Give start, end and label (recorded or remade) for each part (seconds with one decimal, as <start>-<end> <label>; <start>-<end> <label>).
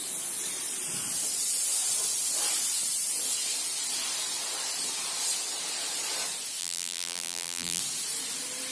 0.0-6.6 recorded; 6.6-7.8 remade; 7.8-8.7 recorded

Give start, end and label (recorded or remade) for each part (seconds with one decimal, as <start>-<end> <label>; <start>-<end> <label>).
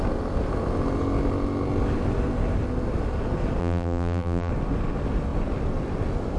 0.0-3.6 recorded; 3.6-4.5 remade; 4.5-6.4 recorded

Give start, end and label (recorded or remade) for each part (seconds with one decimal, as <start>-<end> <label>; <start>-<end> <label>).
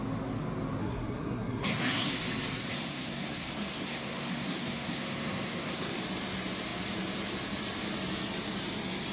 0.0-0.8 recorded; 0.8-2.1 remade; 2.1-2.6 recorded; 2.6-6.0 remade; 6.0-9.1 recorded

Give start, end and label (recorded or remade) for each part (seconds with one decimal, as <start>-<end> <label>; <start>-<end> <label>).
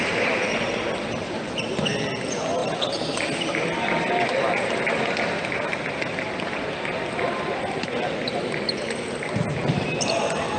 0.0-10.6 recorded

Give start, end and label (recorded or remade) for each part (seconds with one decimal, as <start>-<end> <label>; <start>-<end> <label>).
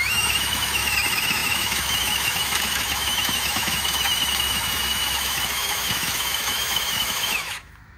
0.0-8.0 remade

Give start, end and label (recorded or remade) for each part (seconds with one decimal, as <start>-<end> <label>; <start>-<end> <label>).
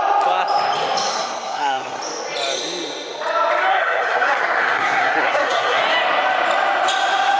0.0-1.1 recorded; 1.1-2.0 remade; 2.0-3.7 recorded; 3.7-5.8 remade; 5.8-7.4 recorded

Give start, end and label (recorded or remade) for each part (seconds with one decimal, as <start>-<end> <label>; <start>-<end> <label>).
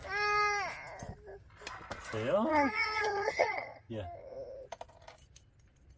0.0-2.5 recorded; 2.5-3.9 remade; 3.9-6.0 recorded